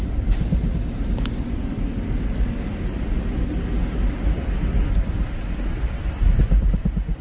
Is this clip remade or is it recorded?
recorded